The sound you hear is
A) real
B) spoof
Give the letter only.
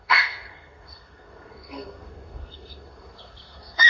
B